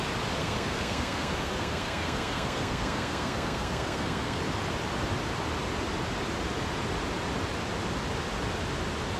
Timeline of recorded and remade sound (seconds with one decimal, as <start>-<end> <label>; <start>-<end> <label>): 0.0-0.4 recorded; 0.4-4.4 remade; 4.4-9.2 recorded

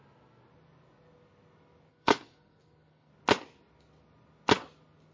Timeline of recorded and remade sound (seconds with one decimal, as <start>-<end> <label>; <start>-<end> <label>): 0.0-1.9 recorded; 1.9-3.1 remade; 3.1-5.1 recorded

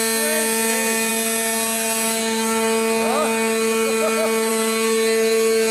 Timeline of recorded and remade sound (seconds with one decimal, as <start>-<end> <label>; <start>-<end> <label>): 0.0-5.7 recorded

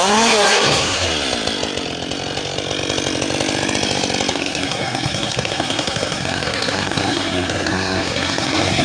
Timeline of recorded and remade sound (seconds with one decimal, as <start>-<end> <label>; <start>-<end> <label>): 0.0-1.1 remade; 1.1-4.3 recorded; 4.3-8.8 remade